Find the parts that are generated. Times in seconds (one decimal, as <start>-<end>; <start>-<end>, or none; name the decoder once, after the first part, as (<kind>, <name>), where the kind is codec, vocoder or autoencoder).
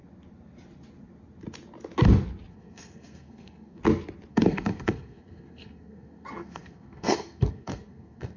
2.5-3.8 (codec, SNAC); 4.3-8.4